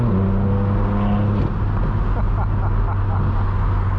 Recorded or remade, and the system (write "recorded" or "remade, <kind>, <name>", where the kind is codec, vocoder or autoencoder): recorded